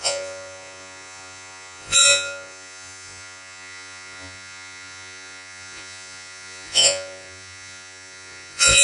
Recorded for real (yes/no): no